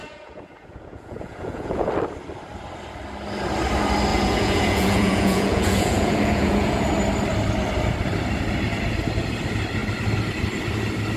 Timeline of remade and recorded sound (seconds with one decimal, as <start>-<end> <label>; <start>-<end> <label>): 0.0-1.9 remade; 1.9-4.1 recorded; 4.1-6.8 remade; 6.8-11.2 recorded